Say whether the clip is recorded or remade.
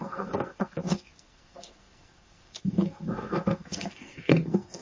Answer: remade